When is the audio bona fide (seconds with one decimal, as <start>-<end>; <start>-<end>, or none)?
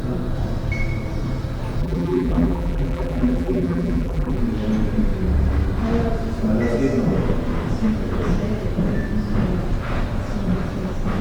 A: 0.0-1.8; 4.4-11.2